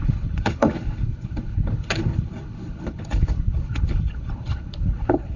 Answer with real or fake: fake